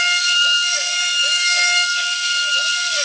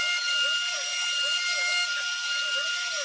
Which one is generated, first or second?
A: first